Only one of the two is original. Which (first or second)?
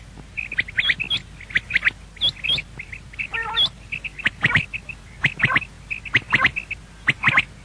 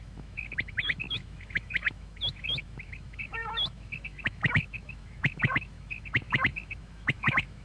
first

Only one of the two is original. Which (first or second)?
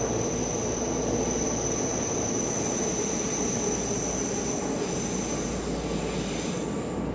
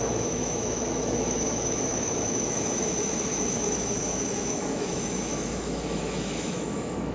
first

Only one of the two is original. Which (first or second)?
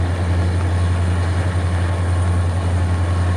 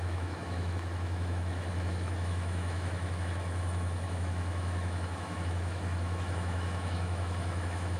first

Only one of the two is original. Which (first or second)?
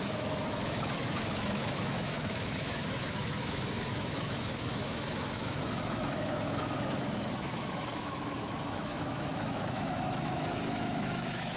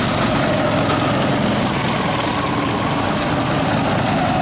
second